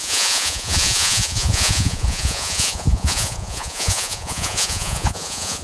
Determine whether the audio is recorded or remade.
remade